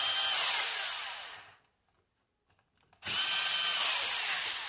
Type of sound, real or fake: real